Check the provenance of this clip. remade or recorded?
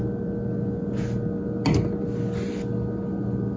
recorded